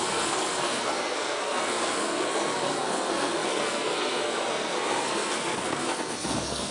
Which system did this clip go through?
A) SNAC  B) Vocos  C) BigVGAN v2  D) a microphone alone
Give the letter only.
A